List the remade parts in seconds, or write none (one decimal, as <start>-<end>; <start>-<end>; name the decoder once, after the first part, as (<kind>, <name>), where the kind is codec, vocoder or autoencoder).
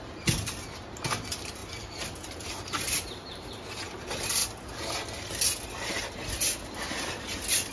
1.6-3.6 (vocoder, BigVGAN v2)